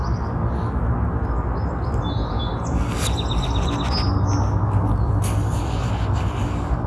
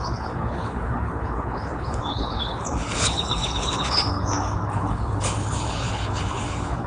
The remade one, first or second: second